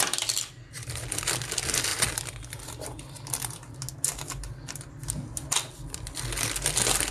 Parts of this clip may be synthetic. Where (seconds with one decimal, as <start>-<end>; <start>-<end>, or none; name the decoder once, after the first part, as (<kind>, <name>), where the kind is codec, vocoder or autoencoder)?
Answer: none